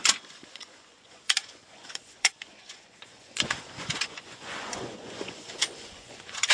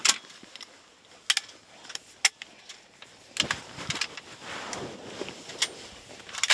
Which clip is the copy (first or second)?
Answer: first